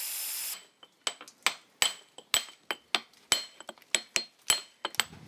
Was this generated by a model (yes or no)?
no